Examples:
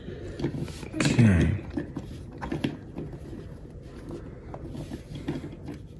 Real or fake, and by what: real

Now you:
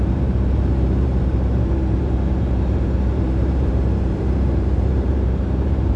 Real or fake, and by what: fake, vocoder, BigVGAN v2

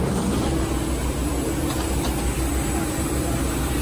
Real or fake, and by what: real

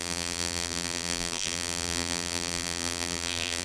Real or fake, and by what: fake, vocoder, BigVGAN v2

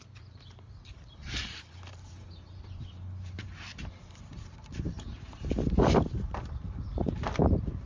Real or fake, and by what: fake, vocoder, BigVGAN v2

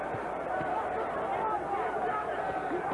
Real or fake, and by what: fake, vocoder, BigVGAN v2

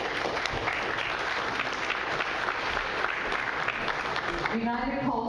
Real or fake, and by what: real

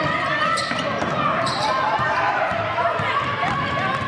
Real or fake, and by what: fake, vocoder, BigVGAN v2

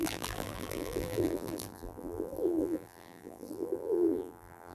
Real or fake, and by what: fake, vocoder, BigVGAN v2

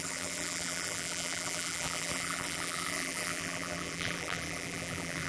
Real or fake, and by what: fake, vocoder, BigVGAN v2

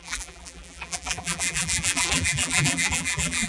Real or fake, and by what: fake, vocoder, BigVGAN v2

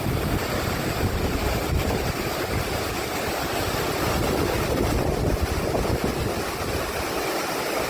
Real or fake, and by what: real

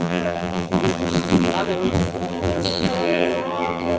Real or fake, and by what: fake, vocoder, BigVGAN v2